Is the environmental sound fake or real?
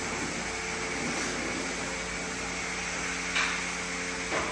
real